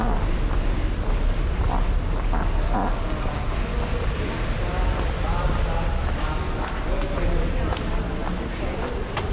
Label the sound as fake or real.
real